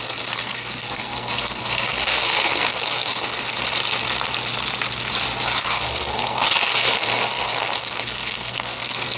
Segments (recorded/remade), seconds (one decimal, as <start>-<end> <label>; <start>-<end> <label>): 0.0-3.5 remade; 3.5-5.6 recorded; 5.6-9.2 remade